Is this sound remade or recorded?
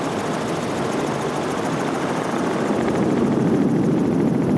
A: recorded